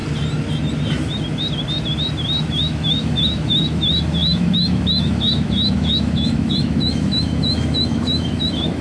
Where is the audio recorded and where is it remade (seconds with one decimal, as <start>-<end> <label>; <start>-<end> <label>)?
0.0-2.5 recorded; 2.5-8.8 remade